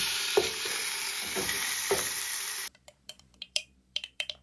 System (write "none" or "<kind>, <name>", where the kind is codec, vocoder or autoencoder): vocoder, BigVGAN v2